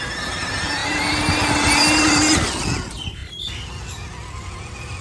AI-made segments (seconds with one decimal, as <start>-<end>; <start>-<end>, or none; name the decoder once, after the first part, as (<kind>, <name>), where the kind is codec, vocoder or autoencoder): none